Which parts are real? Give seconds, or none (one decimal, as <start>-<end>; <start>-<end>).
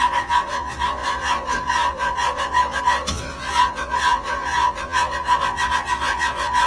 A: none